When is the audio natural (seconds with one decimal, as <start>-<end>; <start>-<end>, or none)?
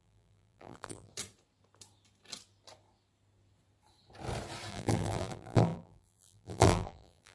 1.1-4.7